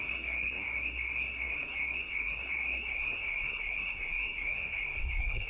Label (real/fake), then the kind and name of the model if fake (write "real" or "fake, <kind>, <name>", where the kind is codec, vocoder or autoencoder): fake, codec, SNAC